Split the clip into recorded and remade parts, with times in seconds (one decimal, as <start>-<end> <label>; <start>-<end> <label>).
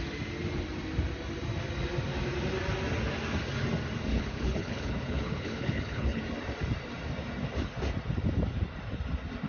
0.0-4.1 recorded; 4.1-6.2 remade; 6.2-9.5 recorded